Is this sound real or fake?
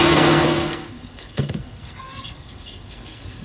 fake